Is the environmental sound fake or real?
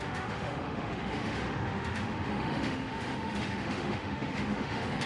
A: fake